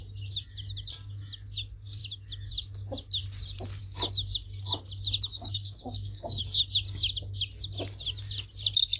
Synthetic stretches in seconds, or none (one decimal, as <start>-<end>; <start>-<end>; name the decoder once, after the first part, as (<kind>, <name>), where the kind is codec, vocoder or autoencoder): 5.3-6.4 (codec, SNAC)

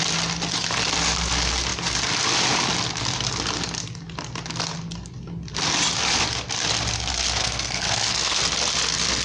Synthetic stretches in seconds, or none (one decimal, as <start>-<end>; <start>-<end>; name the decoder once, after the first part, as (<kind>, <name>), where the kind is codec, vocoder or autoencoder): 7.4-8.4 (codec, SNAC)

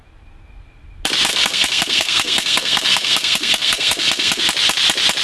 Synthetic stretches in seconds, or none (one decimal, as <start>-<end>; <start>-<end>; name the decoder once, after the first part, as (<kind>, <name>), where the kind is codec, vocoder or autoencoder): 1.3-4.4 (codec, SNAC)

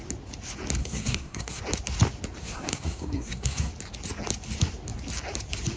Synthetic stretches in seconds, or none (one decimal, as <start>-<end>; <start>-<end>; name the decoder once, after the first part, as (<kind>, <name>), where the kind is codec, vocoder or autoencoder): 0.8-1.6 (codec, SNAC); 2.4-3.7